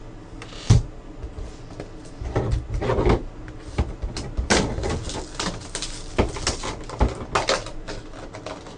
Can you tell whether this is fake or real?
real